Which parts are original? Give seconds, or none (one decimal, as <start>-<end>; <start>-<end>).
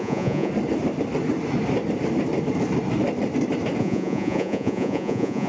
0.5-3.8